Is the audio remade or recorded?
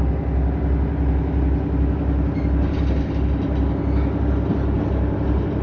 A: recorded